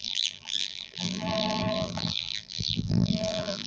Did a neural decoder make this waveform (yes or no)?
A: yes